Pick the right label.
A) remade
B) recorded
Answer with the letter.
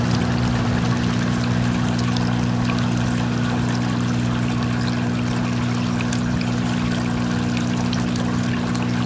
B